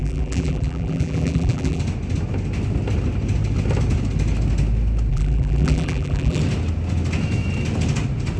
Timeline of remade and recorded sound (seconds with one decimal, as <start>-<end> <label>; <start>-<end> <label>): 0.0-1.8 remade; 1.8-5.1 recorded; 5.1-6.4 remade; 6.4-8.4 recorded